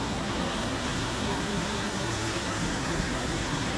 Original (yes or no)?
no